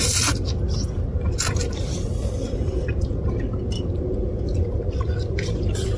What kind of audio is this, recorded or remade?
recorded